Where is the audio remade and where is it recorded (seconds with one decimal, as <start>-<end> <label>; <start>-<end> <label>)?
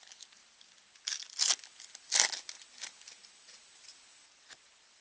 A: 0.0-5.0 recorded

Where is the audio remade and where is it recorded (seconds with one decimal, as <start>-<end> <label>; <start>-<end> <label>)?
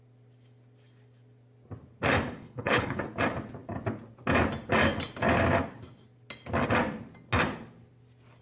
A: 0.0-2.4 recorded; 2.4-3.0 remade; 3.0-8.4 recorded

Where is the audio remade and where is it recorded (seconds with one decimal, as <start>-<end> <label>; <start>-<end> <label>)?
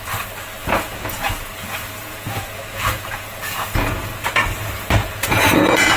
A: 0.0-0.6 recorded; 0.6-4.0 remade; 4.0-5.0 recorded; 5.0-6.0 remade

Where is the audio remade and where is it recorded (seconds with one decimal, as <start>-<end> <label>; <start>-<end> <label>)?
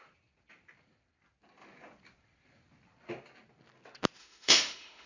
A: 0.0-4.2 recorded; 4.2-5.1 remade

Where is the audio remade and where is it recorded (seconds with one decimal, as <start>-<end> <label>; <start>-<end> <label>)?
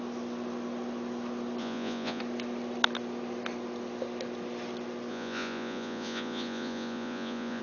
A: 0.0-1.6 recorded; 1.6-2.2 remade; 2.2-5.1 recorded; 5.1-7.6 remade